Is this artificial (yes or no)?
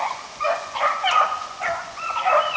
yes